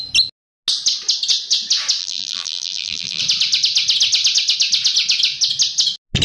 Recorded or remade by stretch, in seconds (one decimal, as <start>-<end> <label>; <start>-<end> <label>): 0.0-2.0 recorded; 2.0-3.2 remade; 3.2-6.2 recorded